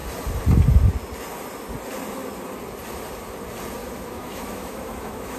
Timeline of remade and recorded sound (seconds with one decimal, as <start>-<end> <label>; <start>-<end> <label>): 0.0-3.8 recorded; 3.8-5.4 remade